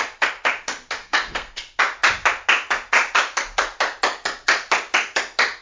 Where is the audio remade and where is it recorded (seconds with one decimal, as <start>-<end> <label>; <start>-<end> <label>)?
0.0-1.0 recorded; 1.0-1.6 remade; 1.6-5.6 recorded